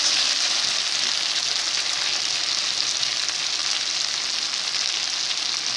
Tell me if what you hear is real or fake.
real